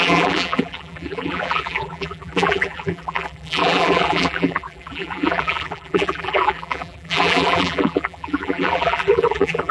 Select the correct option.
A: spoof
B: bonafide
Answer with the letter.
A